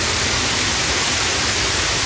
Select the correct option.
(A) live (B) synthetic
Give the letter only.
A